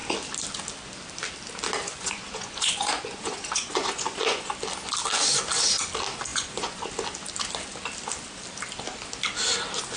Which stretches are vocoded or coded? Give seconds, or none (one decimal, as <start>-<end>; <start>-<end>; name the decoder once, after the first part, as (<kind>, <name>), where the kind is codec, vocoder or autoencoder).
1.8-4.5 (vocoder, Vocos); 6.3-6.9